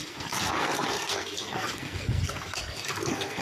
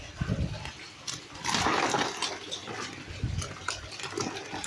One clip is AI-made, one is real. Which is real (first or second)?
second